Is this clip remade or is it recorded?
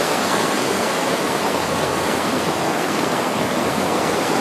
remade